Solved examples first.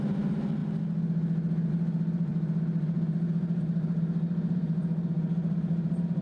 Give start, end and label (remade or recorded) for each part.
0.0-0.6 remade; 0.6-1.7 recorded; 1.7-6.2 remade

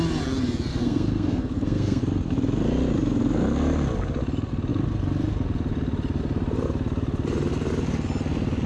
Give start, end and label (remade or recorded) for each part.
0.0-0.7 recorded; 0.7-2.0 remade; 2.0-8.7 recorded

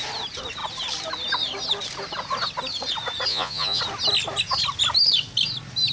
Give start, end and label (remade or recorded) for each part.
0.0-3.3 recorded; 3.3-3.8 remade; 3.8-5.9 recorded